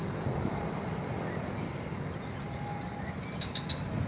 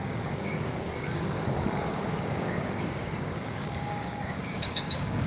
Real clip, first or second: first